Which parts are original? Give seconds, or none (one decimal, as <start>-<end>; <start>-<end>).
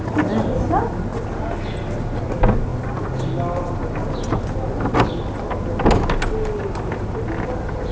0.0-7.9